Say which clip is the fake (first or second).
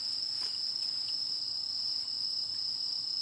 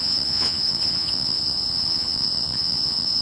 second